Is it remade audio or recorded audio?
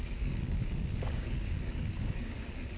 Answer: remade